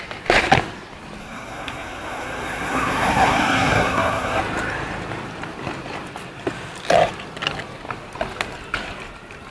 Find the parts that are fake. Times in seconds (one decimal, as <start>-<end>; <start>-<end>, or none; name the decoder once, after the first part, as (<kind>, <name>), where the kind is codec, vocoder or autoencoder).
1.2-4.4 (codec, SNAC)